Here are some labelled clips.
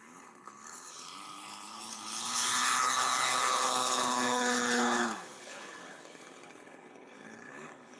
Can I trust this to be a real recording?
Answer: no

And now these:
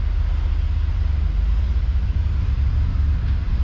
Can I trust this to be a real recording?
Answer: yes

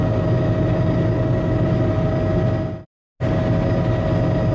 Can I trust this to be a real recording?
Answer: yes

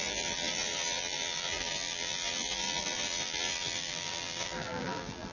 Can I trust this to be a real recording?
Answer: no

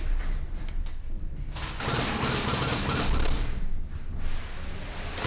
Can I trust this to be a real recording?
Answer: yes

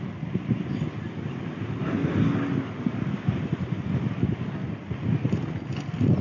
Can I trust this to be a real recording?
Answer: yes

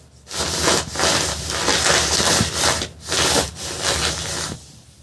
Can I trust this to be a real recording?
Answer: yes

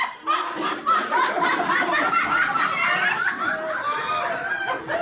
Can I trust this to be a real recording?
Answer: yes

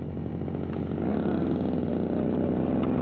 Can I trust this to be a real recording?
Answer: yes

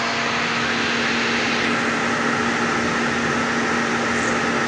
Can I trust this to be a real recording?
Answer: yes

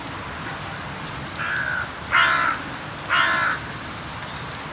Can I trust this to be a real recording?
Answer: yes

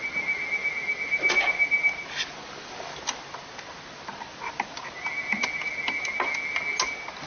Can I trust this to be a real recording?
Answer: yes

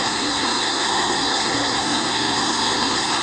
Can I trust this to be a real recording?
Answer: no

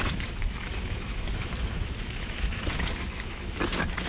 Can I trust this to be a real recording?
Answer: no